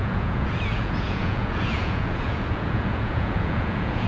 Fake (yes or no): yes